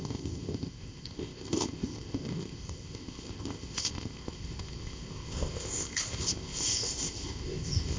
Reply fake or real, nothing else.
fake